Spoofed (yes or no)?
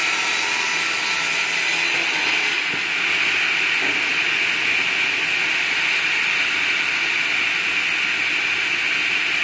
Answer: no